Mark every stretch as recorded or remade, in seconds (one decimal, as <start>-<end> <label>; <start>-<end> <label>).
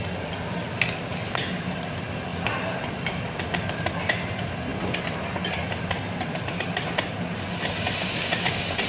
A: 0.0-8.9 recorded